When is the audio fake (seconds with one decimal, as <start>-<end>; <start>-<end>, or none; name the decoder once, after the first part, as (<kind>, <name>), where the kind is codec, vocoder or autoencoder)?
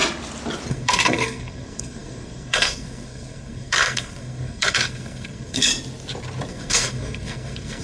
0.7-5.7 (codec, SNAC); 6.5-7.8